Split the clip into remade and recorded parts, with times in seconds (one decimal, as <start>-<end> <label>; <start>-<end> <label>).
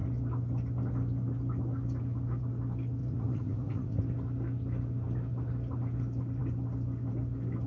0.0-3.0 recorded; 3.0-4.0 remade; 4.0-7.7 recorded